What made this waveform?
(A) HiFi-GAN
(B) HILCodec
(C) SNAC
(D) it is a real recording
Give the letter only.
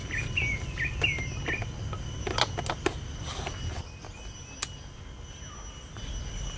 D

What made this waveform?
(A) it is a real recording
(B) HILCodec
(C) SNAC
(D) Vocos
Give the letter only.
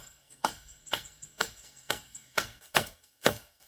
C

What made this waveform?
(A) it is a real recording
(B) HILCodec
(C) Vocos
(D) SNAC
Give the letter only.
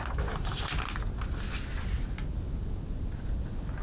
A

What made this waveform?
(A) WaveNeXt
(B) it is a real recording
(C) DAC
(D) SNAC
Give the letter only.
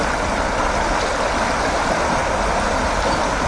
B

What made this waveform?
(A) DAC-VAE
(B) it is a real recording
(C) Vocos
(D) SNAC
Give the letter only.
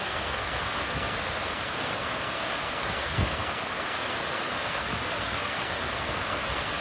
D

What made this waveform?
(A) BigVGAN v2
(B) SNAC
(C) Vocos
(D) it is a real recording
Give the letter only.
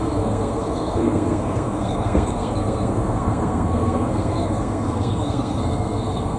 B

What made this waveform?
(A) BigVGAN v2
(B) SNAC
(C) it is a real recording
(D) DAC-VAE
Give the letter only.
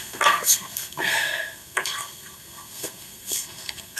B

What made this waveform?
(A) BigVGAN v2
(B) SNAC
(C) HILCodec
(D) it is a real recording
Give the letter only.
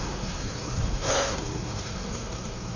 B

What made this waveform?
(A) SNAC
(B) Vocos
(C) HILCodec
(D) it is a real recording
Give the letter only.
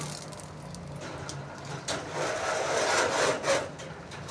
D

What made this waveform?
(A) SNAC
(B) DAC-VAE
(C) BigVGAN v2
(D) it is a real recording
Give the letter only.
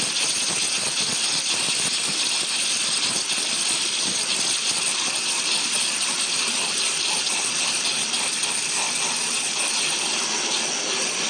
D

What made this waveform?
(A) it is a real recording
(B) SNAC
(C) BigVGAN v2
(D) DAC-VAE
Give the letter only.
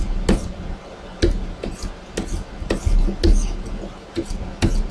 A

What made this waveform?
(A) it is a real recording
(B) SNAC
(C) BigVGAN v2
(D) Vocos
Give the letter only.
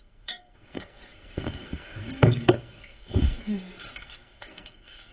B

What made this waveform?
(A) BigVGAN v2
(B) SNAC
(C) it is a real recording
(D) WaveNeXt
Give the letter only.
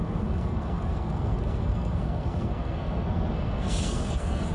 B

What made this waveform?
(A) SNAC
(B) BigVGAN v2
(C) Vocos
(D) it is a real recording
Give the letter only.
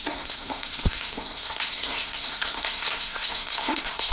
A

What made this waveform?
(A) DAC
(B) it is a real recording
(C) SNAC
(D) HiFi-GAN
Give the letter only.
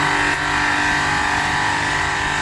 B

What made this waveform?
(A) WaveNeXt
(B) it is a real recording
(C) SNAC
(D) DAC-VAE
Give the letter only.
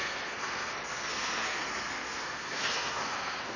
C